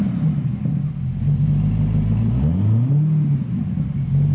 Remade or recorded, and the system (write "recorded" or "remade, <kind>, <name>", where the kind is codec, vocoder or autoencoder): recorded